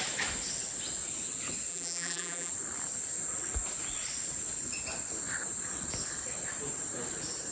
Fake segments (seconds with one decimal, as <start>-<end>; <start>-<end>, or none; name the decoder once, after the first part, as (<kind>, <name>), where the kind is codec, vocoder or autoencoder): 1.7-2.5 (vocoder, BigVGAN v2)